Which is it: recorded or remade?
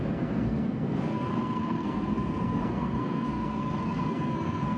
remade